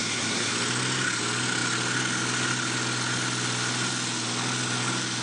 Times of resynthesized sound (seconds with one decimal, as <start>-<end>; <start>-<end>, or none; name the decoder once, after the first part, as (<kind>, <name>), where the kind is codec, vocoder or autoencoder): 0.0-0.5 (codec, SNAC)